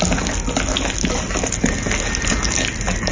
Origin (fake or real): real